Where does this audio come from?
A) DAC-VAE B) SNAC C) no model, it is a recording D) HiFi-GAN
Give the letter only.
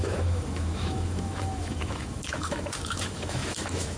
A